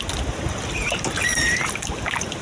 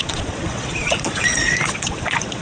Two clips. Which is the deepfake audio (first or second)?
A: second